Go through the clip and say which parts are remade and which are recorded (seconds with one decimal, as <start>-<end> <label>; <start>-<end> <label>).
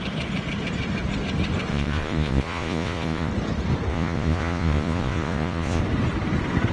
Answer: 0.0-1.7 recorded; 1.7-3.3 remade; 3.3-3.9 recorded; 3.9-5.8 remade; 5.8-6.7 recorded